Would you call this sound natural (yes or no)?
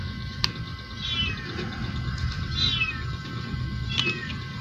yes